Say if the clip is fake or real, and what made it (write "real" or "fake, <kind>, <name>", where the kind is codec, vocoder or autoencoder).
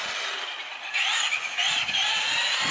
real